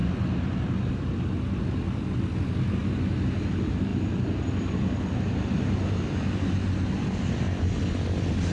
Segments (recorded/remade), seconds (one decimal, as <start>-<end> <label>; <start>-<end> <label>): 0.0-8.5 recorded